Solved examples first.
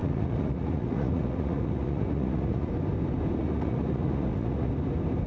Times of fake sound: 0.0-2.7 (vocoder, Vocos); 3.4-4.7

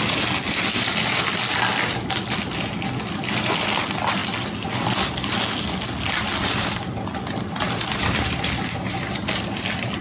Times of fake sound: none

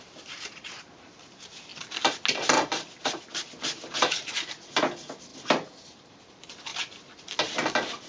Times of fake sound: 0.0-1.7 (vocoder, BigVGAN v2); 3.4-6.7

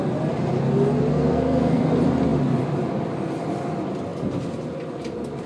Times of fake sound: 1.1-1.9 (codec, SNAC)